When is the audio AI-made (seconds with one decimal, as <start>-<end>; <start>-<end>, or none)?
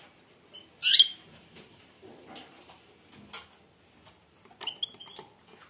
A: 0.8-2.9